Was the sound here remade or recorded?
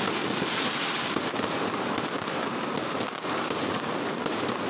recorded